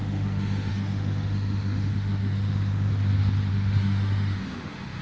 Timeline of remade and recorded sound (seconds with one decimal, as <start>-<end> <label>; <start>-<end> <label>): 0.0-2.9 remade; 2.9-3.5 recorded; 3.5-5.0 remade